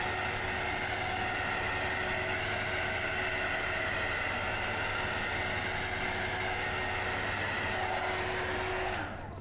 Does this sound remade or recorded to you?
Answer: recorded